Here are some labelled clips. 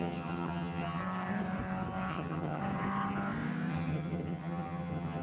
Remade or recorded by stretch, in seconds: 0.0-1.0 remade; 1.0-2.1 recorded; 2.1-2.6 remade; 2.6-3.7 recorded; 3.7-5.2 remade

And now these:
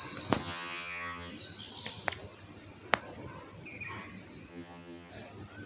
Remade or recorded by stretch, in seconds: 0.0-0.4 recorded; 0.4-1.3 remade; 1.3-4.5 recorded; 4.5-5.1 remade; 5.1-5.7 recorded

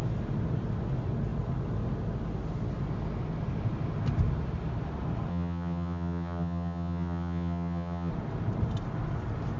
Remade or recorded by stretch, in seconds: 0.0-5.3 recorded; 5.3-8.1 remade; 8.1-9.6 recorded